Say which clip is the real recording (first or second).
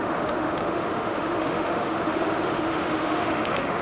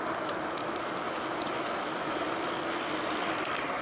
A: second